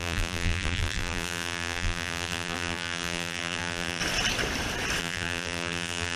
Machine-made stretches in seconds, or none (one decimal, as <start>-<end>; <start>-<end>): 0.0-4.0; 5.0-6.2